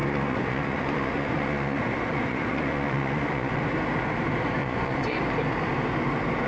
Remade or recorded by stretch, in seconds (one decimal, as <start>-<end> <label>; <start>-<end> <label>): 0.0-3.6 remade; 3.6-4.6 recorded; 4.6-5.2 remade; 5.2-6.5 recorded